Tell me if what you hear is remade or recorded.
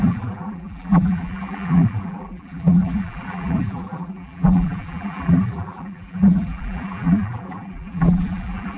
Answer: remade